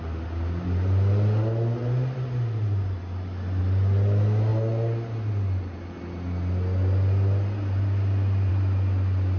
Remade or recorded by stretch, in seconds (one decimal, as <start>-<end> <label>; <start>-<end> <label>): 0.0-9.4 recorded